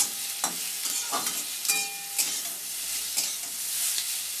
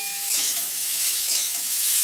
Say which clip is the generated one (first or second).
second